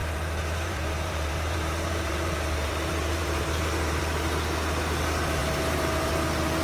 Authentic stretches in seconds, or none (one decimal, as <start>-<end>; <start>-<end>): 4.0-5.4; 6.1-6.6